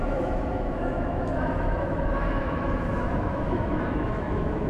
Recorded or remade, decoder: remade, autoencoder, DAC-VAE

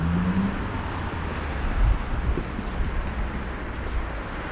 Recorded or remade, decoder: recorded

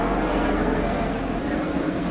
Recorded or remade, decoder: remade, codec, SNAC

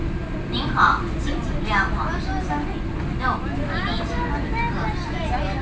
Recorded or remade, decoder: recorded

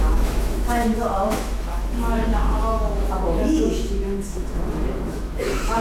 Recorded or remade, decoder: remade, autoencoder, DAC-VAE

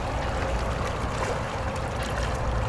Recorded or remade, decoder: recorded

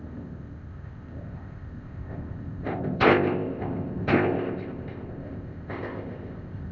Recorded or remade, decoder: remade, codec, ZipCodec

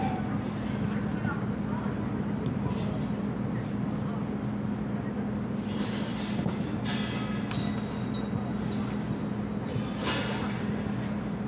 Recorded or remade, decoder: recorded